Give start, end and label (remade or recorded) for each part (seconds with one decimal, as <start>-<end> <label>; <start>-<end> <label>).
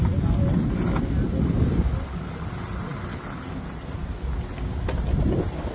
0.0-5.7 recorded